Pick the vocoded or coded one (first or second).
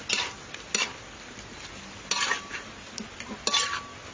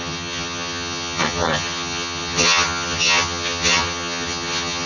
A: second